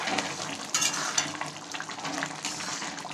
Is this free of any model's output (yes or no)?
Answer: yes